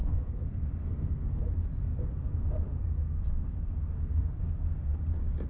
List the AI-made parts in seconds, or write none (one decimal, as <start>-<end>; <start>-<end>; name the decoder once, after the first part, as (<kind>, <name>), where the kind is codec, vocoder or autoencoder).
0.0-1.4 (codec, SNAC); 1.9-5.0